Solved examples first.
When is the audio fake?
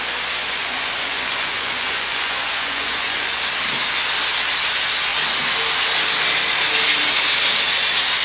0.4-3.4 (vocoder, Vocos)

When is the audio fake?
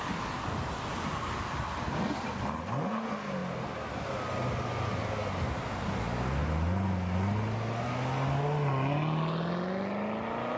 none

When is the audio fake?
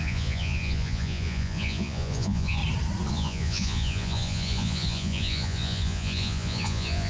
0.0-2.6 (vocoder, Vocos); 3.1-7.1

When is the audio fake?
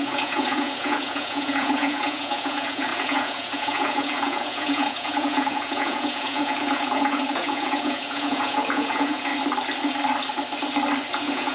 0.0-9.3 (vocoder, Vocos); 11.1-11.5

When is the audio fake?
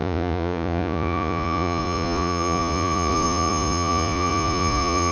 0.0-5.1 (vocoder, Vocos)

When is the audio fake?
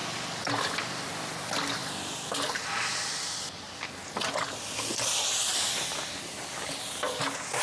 none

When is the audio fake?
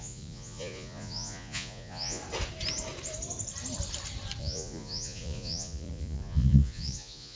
0.0-2.2 (vocoder, Vocos); 4.4-7.4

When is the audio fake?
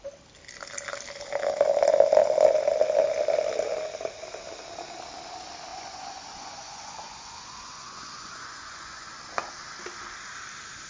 5.7-9.2 (vocoder, Vocos)